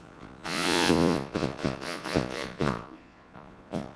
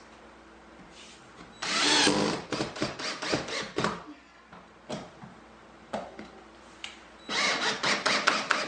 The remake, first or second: first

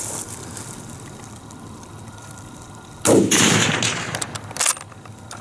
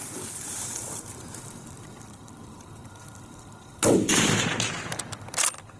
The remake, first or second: second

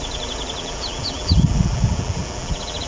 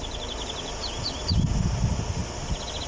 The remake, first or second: first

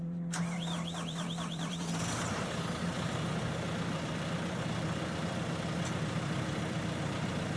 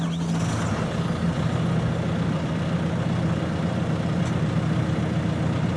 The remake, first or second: first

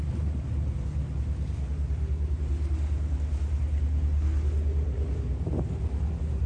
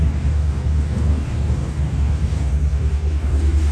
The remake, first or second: second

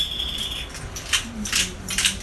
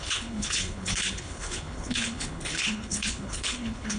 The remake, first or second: second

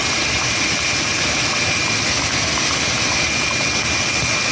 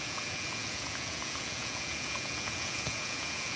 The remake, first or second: second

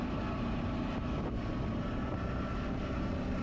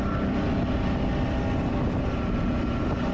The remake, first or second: first